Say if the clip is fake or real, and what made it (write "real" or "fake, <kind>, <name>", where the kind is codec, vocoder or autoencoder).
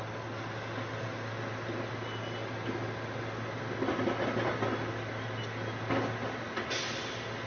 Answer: real